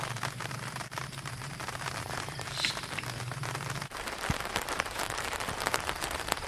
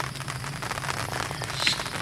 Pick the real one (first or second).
second